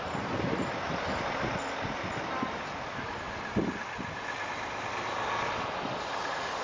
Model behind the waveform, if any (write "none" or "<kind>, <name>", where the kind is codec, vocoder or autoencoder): none